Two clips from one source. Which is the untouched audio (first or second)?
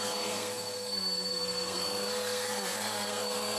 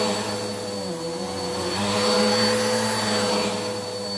second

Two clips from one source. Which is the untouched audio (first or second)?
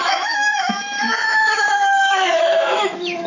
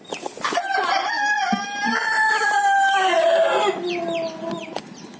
second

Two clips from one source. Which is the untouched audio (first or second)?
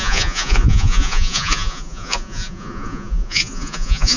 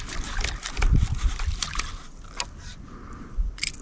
second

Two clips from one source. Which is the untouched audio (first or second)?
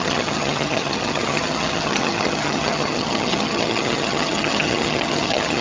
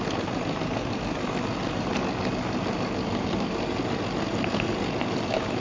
second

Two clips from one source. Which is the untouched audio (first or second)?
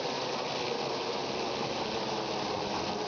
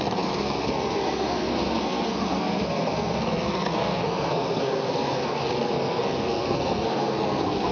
first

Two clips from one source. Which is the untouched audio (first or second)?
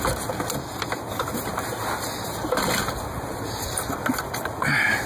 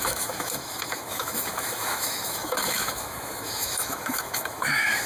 first